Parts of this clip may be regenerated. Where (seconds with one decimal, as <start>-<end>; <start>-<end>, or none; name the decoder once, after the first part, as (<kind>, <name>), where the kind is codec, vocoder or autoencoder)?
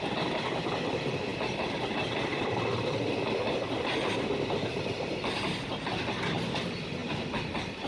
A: none